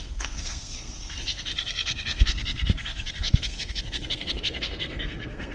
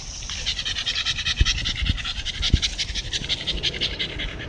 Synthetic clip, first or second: first